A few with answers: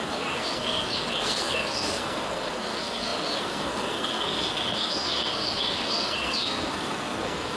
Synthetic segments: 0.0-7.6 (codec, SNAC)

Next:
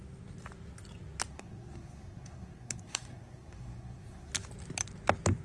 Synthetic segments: 1.3-4.3 (codec, SNAC)